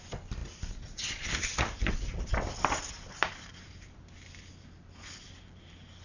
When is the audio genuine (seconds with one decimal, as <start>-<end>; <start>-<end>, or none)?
0.0-0.4; 4.0-6.0